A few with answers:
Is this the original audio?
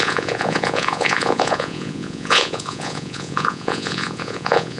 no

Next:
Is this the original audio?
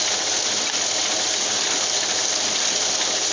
yes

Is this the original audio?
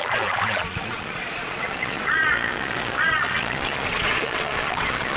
no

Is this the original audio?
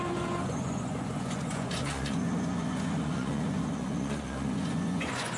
no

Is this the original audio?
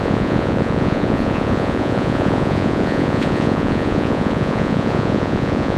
no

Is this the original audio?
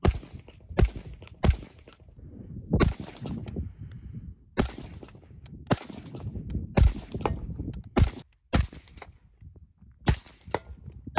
yes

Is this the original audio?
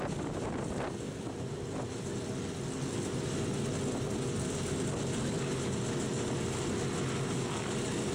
yes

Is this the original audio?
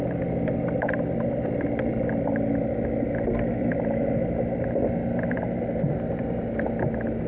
yes